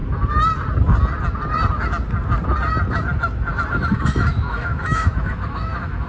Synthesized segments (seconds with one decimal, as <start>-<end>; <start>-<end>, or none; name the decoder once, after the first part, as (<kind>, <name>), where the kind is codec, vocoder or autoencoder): 3.7-6.1 (autoencoder, DAC-VAE)